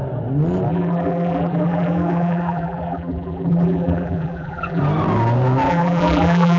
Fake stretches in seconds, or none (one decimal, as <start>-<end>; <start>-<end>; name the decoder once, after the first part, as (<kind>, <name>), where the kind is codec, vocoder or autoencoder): 0.7-4.8 (vocoder, BigVGAN v2); 5.7-6.6